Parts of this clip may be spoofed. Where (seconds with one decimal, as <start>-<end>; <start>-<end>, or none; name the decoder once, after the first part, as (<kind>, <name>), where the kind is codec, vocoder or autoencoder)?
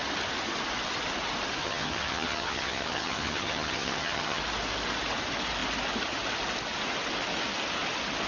1.6-4.4 (vocoder, HiFi-GAN)